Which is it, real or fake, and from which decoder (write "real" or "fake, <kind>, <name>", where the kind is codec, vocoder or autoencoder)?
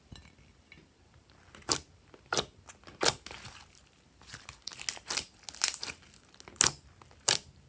real